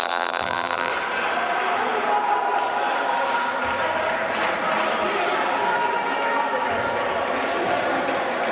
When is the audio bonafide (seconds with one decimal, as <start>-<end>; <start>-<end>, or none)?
0.9-8.5